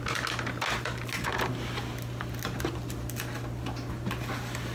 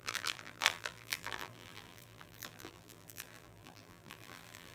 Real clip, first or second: first